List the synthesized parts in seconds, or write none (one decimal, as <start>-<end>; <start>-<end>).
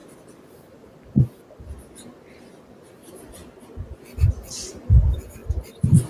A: 0.0-3.4; 4.3-5.4